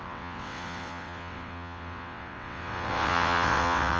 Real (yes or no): no